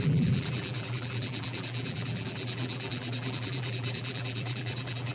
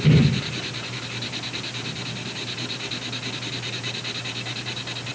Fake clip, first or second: first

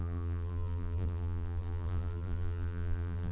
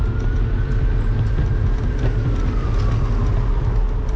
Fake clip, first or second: first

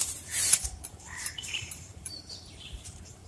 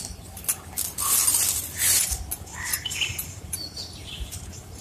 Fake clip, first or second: first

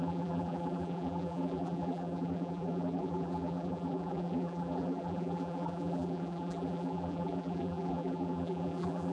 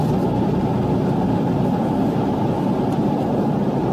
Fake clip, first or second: first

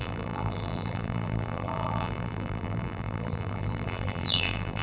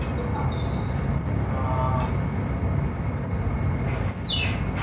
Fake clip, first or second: first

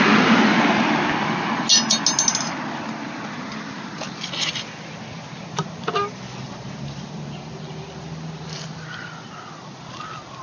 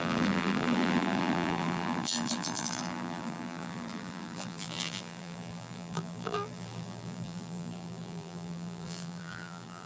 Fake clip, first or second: second